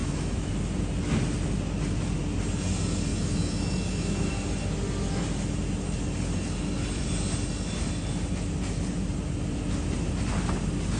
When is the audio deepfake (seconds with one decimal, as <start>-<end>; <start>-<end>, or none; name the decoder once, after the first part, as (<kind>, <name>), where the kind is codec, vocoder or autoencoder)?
0.0-0.5 (autoencoder, DAC-VAE); 3.1-4.3